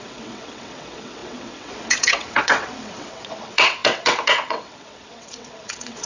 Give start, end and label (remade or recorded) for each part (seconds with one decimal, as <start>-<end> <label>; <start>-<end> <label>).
0.0-6.1 remade